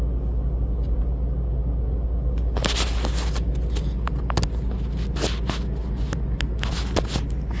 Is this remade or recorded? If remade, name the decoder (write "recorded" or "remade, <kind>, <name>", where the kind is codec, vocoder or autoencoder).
recorded